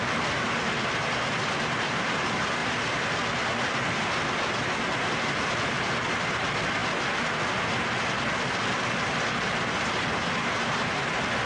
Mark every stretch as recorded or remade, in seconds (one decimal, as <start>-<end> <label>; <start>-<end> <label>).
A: 0.0-11.5 recorded